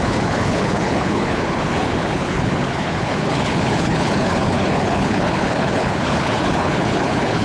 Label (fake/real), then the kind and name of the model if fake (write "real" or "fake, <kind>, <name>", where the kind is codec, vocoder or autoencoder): fake, codec, HILCodec